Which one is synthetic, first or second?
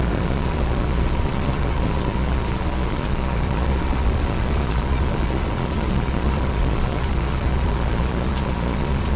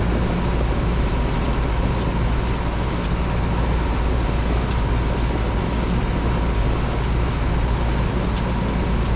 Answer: first